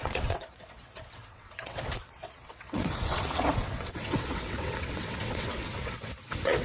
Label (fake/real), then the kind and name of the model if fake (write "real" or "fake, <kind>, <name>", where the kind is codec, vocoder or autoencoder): fake, vocoder, WaveNeXt